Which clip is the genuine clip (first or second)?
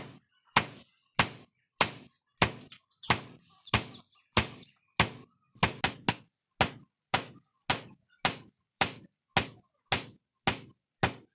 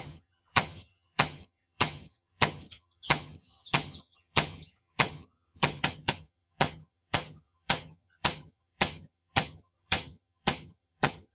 first